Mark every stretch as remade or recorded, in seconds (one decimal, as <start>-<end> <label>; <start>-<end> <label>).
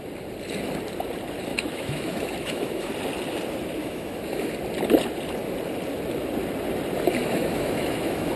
0.0-1.5 recorded; 1.5-2.9 remade; 2.9-3.8 recorded; 3.8-4.5 remade; 4.5-7.2 recorded; 7.2-8.4 remade